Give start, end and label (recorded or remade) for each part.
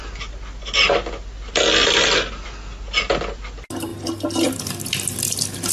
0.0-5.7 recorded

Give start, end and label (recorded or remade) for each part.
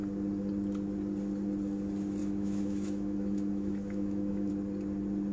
0.0-2.2 recorded; 2.2-4.5 remade; 4.5-5.3 recorded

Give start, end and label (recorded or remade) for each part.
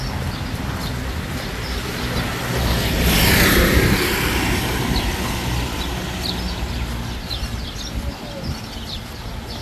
0.0-9.6 recorded